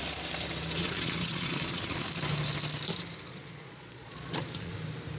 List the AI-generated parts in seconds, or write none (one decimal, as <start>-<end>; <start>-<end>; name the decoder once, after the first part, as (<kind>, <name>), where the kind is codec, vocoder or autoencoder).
0.8-2.0 (vocoder, Vocos); 3.3-4.7